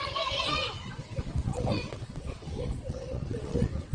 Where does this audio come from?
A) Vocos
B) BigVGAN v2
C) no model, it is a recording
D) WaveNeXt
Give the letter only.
D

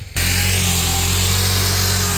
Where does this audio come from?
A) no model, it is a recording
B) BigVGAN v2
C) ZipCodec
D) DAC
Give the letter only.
A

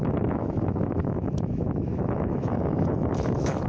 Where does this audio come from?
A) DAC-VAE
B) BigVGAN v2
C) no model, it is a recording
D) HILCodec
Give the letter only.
A